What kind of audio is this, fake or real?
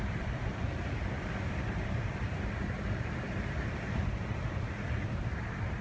fake